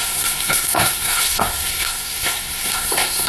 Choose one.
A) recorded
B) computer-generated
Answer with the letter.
B